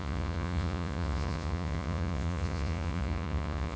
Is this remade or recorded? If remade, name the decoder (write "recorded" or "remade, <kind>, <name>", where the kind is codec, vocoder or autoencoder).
remade, vocoder, Vocos